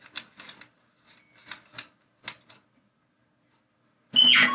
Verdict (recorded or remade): recorded